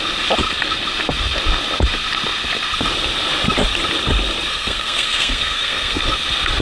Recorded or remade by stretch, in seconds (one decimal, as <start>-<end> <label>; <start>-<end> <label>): 0.0-4.5 recorded; 4.5-6.0 remade; 6.0-6.6 recorded